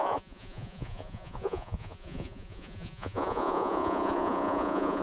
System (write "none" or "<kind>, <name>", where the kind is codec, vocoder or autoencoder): vocoder, Vocos